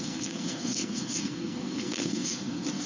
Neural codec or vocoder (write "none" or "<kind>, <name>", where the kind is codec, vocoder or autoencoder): codec, SNAC